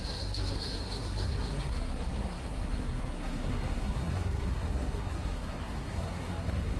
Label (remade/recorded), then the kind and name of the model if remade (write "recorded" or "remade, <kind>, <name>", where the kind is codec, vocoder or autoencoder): remade, codec, SNAC